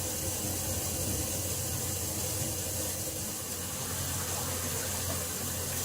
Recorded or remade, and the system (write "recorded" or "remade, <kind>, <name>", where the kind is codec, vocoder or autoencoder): recorded